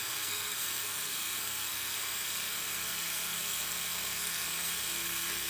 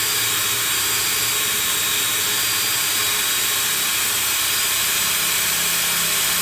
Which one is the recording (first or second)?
second